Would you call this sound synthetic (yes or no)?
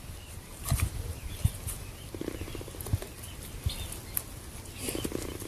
no